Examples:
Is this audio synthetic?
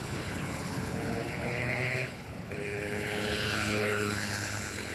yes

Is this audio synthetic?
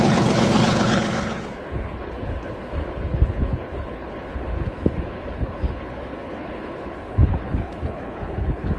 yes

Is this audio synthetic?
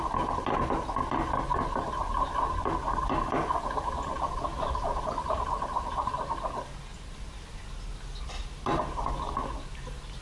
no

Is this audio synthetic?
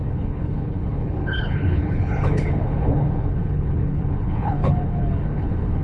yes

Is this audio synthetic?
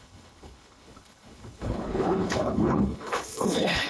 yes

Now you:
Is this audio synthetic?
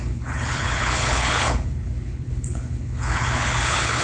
yes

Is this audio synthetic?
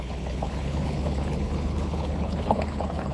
yes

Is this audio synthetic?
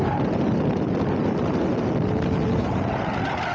no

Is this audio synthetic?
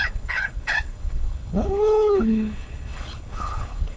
yes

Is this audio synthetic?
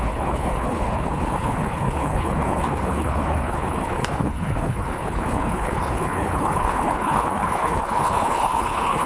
yes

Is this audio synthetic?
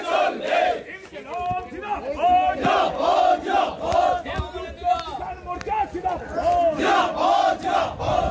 no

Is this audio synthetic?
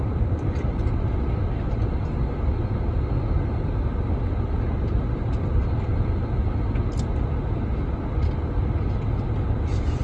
no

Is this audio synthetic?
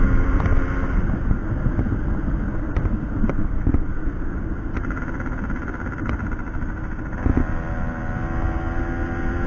no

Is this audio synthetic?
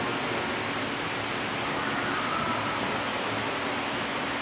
no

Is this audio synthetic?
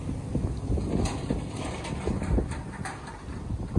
no